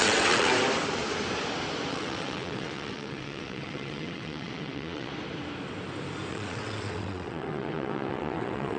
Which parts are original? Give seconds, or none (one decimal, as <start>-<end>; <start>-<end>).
0.5-1.9; 5.1-6.3